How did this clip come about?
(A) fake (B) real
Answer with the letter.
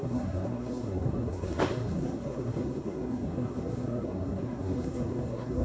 A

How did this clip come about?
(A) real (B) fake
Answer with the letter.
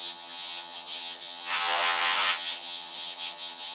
B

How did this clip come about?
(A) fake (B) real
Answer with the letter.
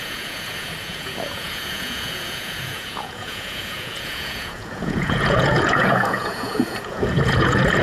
A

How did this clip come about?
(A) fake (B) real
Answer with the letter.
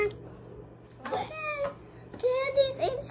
B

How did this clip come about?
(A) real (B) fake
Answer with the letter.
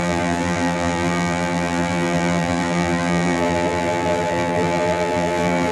B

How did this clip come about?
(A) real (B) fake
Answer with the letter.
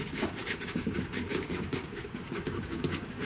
B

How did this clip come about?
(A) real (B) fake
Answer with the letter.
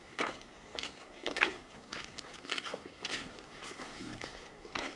B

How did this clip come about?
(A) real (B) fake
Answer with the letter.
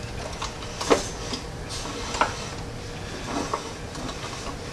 A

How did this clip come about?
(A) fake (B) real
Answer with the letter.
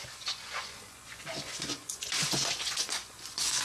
A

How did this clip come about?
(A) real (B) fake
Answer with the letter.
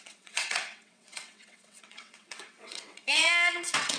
B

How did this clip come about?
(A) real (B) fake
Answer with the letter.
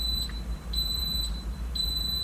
B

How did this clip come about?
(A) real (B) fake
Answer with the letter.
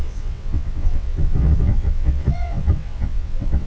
B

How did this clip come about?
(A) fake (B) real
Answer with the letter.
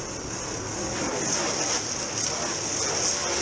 B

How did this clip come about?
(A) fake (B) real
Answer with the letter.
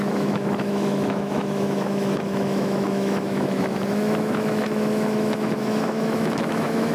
A